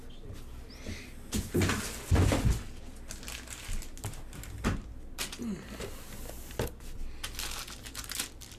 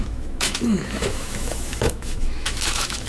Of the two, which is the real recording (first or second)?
first